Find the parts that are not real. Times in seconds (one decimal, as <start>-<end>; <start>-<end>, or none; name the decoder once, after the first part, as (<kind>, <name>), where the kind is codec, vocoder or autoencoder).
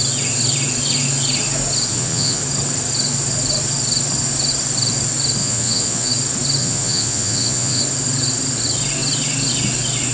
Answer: 1.9-2.4 (vocoder, Vocos); 5.4-6.1; 6.6-7.8